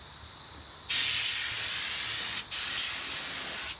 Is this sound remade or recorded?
recorded